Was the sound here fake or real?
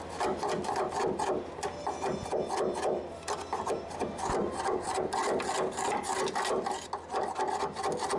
real